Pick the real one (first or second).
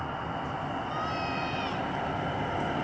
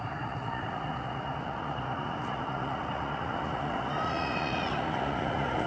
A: first